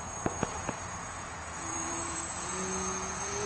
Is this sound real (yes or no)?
no